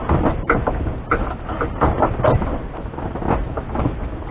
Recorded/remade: recorded